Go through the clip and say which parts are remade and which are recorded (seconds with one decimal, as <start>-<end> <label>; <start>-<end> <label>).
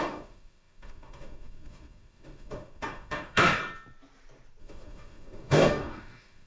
0.0-3.6 remade; 3.6-4.6 recorded; 4.6-6.5 remade